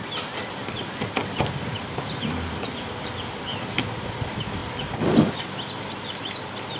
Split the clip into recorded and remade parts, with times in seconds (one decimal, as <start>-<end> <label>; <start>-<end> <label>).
0.0-6.8 recorded